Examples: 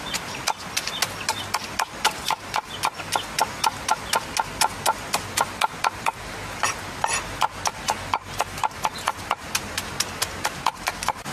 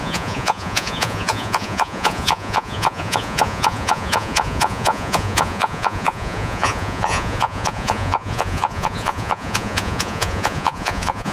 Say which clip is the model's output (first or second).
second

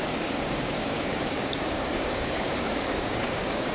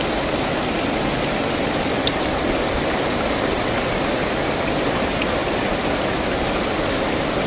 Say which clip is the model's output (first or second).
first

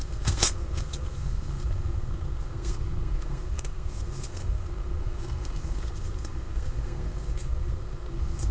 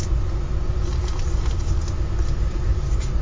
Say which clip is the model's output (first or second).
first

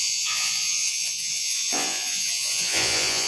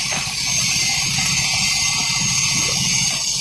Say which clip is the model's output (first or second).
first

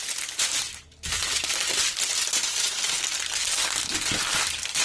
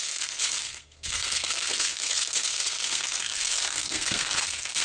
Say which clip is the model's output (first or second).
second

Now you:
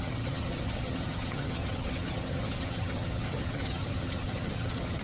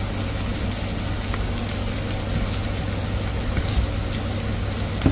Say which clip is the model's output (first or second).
first